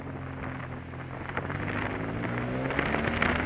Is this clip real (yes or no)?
yes